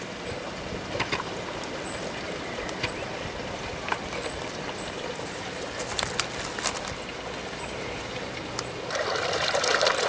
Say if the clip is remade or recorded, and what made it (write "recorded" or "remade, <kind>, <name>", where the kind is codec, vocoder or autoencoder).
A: recorded